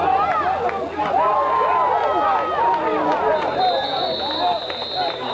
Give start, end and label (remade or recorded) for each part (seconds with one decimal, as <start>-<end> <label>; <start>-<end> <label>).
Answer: 0.0-5.3 recorded